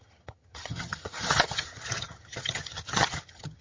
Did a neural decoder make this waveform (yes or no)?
yes